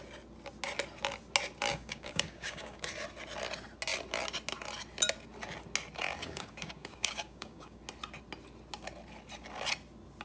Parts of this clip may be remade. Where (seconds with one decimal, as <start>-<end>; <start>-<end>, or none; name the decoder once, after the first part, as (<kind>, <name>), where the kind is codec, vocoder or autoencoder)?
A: 1.7-2.9 (codec, DAC); 6.2-7.8